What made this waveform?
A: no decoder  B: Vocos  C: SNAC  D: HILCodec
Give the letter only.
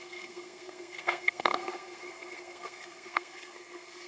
C